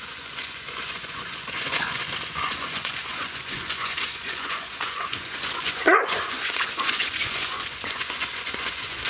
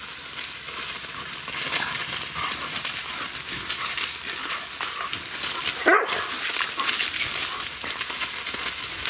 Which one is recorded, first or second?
second